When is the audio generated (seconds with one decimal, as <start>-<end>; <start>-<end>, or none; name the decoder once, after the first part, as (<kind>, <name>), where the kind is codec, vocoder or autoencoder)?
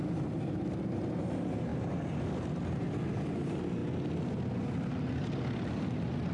0.0-1.7 (vocoder, BigVGAN v2); 3.3-3.8; 5.6-6.3